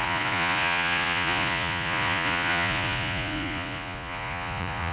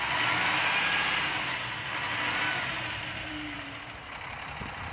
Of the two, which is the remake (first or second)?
first